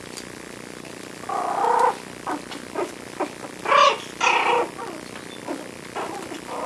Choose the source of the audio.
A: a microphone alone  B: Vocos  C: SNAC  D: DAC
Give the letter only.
A